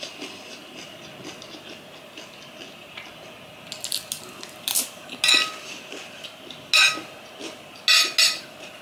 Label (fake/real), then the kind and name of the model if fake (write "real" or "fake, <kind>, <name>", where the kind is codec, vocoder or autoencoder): real